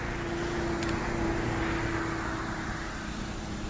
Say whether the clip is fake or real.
real